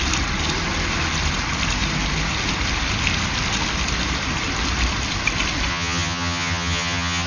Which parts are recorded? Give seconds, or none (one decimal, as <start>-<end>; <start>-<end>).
0.0-5.7